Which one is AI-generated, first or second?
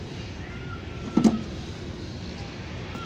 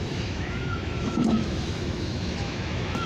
second